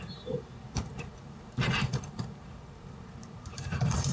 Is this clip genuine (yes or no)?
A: no